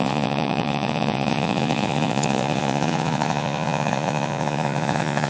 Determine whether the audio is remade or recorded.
remade